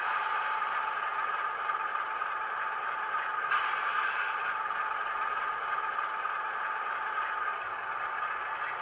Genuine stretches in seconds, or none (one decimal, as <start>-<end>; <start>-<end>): 0.0-8.8